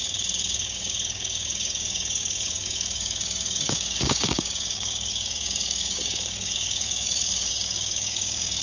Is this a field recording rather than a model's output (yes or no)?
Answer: no